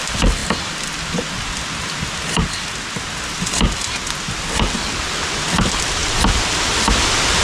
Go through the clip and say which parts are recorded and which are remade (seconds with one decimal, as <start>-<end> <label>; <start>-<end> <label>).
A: 0.0-7.4 recorded